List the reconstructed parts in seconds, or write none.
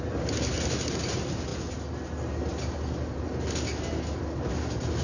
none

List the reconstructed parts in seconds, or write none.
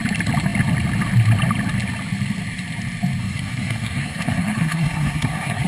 3.2-5.7 (codec, SNAC)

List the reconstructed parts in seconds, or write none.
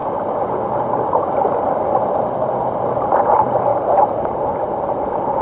none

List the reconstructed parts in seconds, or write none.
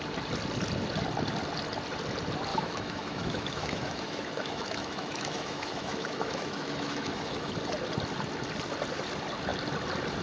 2.5-7.5 (autoencoder, DAC-VAE)